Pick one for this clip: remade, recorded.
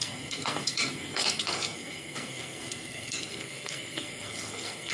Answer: remade